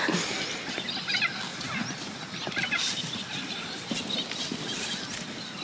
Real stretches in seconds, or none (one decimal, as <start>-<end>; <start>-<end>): 0.0-5.6